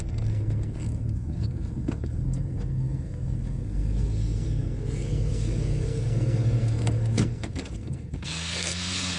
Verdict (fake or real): fake